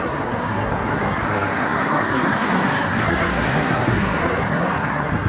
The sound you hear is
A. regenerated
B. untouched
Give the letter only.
A